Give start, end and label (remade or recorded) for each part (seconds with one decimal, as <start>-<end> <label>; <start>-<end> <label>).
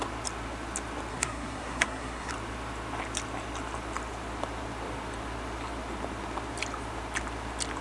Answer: 0.0-1.1 recorded; 1.1-2.3 remade; 2.3-7.8 recorded